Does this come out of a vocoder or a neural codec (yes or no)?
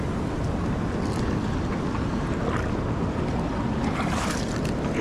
no